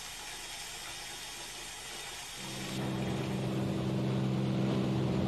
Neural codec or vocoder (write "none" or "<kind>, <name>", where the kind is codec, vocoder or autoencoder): none